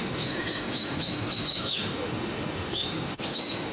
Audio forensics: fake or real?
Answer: fake